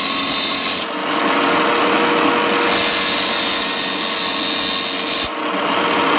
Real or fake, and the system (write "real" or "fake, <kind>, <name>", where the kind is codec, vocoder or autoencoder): real